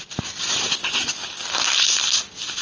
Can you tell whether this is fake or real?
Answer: real